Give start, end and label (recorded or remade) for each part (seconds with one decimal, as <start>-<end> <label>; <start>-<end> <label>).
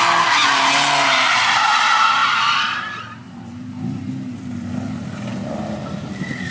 0.0-6.5 recorded